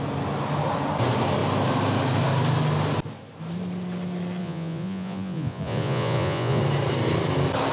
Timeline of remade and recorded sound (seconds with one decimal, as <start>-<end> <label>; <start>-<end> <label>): 0.0-4.4 recorded; 4.4-6.6 remade; 6.6-7.7 recorded